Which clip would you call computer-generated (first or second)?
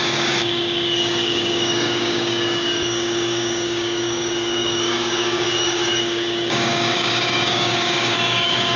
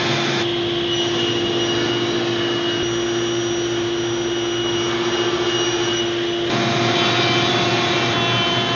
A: first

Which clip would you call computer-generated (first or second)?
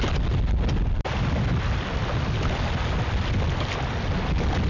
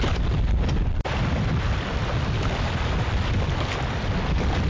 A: second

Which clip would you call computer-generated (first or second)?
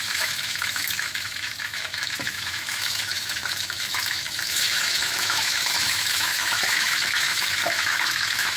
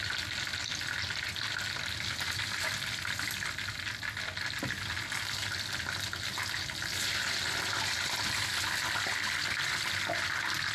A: first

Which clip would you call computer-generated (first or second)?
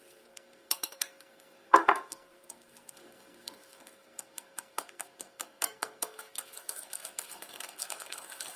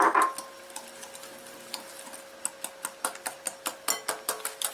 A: first